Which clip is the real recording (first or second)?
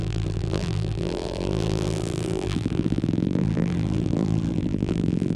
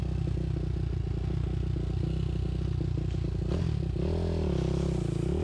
second